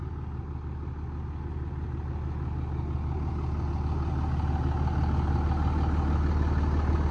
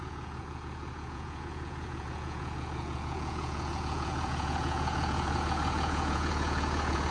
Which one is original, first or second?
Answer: first